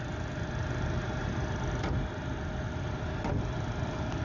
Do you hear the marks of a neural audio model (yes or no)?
no